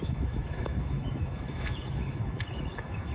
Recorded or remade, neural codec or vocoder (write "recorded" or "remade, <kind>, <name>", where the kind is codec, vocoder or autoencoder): remade, autoencoder, DAC-VAE